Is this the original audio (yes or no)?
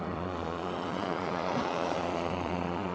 no